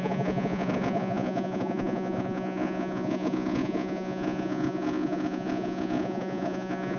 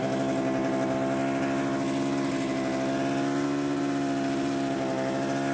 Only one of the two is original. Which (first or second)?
second